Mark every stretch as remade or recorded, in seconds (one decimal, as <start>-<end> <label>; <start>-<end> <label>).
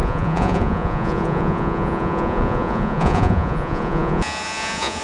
0.0-5.0 remade